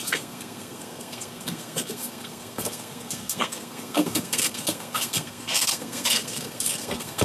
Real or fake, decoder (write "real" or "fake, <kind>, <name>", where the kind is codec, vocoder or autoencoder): fake, codec, SNAC